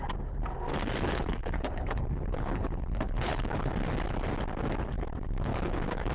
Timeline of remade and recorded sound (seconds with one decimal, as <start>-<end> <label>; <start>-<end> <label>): 0.0-0.7 recorded; 0.7-3.7 remade; 3.7-5.5 recorded; 5.5-6.1 remade